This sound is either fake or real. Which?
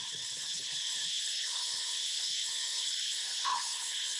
fake